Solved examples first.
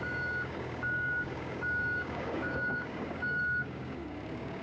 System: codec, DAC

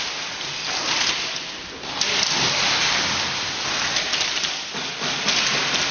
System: none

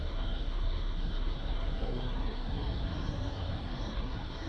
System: codec, SNAC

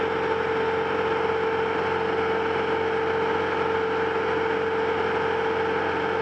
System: none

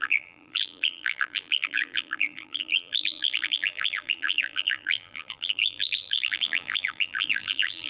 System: vocoder, BigVGAN v2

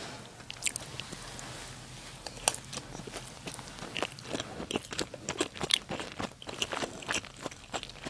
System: none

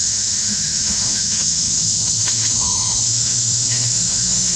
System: autoencoder, DAC-VAE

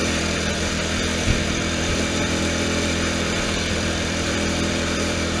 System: vocoder, BigVGAN v2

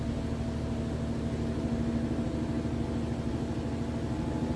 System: none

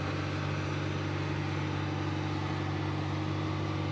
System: none